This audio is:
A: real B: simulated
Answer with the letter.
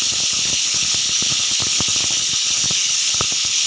B